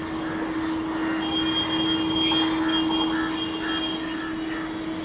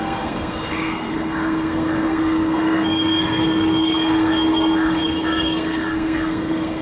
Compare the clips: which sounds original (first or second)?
first